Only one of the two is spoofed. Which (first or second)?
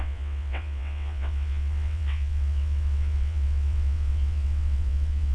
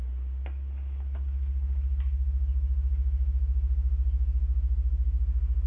first